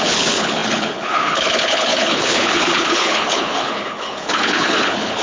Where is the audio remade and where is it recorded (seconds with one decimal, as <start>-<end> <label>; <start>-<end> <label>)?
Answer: 0.0-5.2 remade